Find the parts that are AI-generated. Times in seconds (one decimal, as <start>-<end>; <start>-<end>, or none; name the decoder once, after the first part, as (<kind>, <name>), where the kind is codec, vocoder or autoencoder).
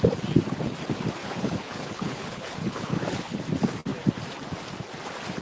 1.2-3.4 (codec, HILCodec)